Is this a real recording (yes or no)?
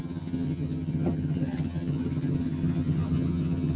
no